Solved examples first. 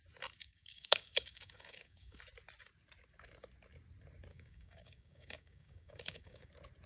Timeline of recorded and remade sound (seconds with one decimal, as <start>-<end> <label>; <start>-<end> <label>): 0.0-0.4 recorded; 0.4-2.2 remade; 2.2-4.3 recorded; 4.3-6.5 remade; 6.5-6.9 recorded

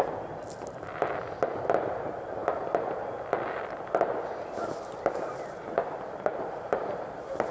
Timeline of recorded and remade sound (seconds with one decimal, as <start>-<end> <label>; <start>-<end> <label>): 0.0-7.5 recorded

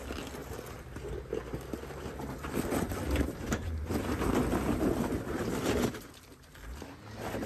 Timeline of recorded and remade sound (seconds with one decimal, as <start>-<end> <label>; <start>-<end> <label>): 0.0-7.5 recorded

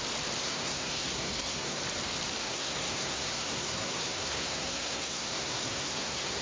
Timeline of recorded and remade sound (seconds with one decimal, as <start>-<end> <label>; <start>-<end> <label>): 0.0-0.4 recorded; 0.4-1.8 remade; 1.8-2.4 recorded; 2.4-6.4 remade

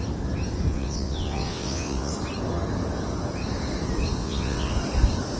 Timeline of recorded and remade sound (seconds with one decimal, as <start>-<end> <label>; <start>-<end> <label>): 0.0-0.7 recorded; 0.7-2.1 remade; 2.1-4.2 recorded; 4.2-4.7 remade; 4.7-5.4 recorded

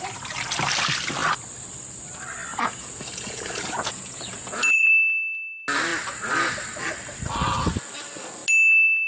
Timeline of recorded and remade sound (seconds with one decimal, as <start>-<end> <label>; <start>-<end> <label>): 0.0-2.5 recorded; 2.5-4.9 remade; 4.9-9.1 recorded

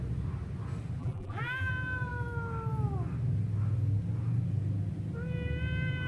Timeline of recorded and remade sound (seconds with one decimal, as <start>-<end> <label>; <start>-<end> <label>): 0.0-1.0 recorded; 1.0-1.7 remade; 1.7-6.1 recorded